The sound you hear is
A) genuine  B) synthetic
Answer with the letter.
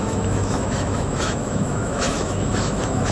B